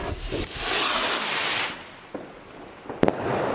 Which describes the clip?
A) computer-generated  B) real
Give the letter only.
B